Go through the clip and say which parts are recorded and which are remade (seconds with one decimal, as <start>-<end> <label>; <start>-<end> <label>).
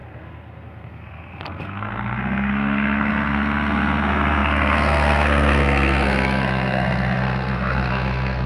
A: 0.0-8.5 remade